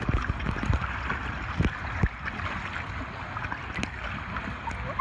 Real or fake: real